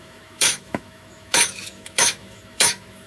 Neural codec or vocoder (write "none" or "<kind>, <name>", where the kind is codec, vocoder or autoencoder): autoencoder, DAC-VAE